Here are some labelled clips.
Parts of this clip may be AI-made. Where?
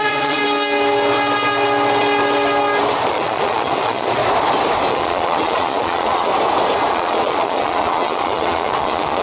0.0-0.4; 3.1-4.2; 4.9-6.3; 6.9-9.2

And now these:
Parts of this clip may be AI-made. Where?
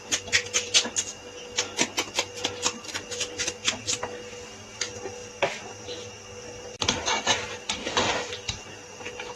7.8-8.3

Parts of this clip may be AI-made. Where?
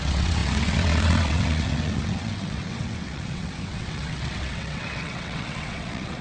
0.0-6.2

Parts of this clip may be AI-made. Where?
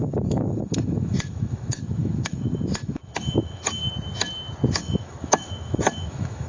0.0-3.8; 4.7-6.5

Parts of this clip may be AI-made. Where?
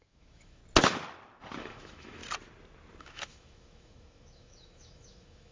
0.0-0.6; 1.6-2.2; 3.0-5.5